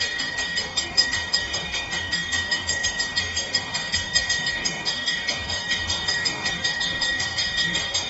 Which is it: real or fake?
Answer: fake